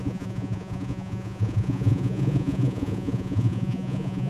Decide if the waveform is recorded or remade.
remade